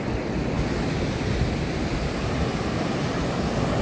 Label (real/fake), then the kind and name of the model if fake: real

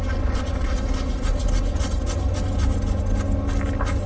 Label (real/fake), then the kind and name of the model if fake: real